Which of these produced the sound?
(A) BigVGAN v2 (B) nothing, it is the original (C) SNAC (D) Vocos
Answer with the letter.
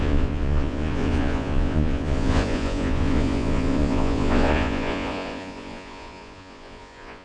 D